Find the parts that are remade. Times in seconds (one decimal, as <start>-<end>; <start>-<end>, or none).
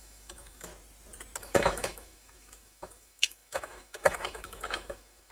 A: 0.0-0.7; 1.4-5.3